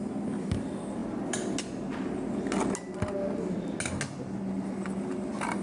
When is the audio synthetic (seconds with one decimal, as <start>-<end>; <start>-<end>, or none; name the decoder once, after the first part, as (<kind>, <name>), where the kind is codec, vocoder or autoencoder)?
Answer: none